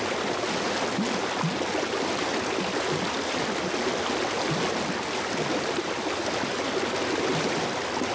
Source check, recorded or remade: recorded